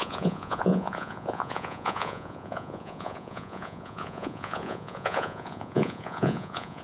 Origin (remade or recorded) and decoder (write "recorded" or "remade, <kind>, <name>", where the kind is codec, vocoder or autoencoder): remade, vocoder, Vocos